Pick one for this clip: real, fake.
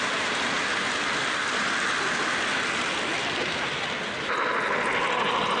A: real